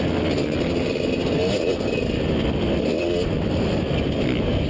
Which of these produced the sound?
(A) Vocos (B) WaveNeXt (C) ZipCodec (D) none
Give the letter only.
D